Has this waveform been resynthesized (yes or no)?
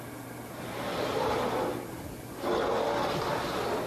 no